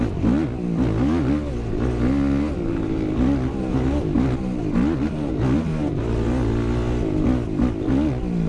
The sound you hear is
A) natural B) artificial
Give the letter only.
A